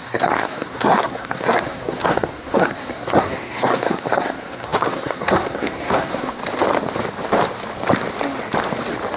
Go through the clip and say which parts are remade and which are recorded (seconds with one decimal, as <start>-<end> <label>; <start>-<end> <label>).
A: 0.0-6.4 remade; 6.4-9.2 recorded